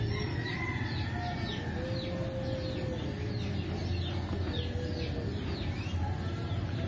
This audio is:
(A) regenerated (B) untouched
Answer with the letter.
B